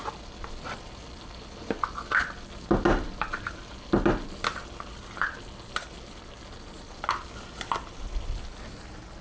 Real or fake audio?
real